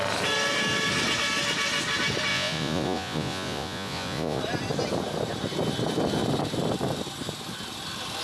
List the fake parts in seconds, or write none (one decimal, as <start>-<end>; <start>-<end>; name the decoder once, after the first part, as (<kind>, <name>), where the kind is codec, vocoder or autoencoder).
2.3-4.4 (vocoder, Vocos)